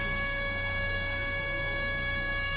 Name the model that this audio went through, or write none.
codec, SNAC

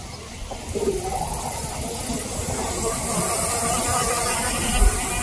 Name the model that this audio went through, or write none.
none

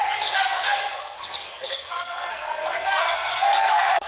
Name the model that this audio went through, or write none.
codec, SNAC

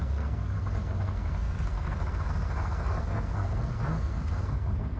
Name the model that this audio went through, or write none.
codec, SNAC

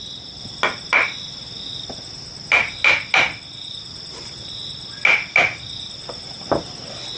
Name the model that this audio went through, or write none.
none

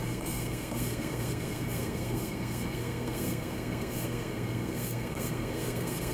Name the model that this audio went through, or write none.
codec, SNAC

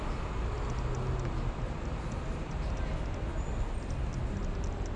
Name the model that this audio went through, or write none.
none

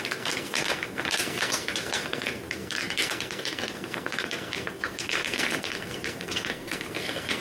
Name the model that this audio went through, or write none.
codec, SNAC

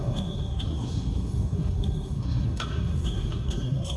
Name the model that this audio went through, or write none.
codec, SNAC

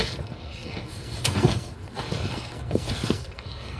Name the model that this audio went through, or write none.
codec, SNAC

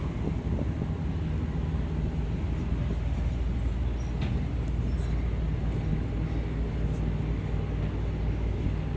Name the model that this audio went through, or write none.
none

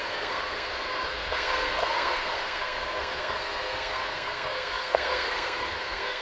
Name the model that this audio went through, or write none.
codec, SNAC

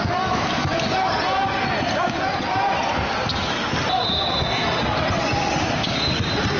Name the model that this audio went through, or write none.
none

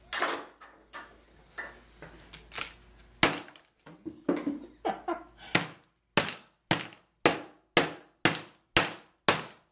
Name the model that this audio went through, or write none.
none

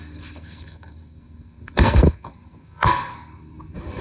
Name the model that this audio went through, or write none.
codec, SNAC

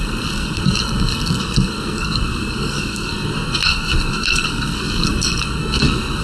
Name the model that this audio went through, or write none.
codec, SNAC